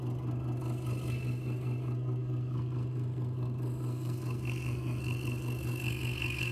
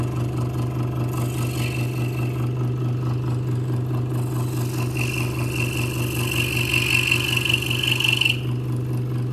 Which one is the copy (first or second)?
first